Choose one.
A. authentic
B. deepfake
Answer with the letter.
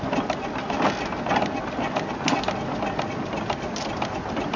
A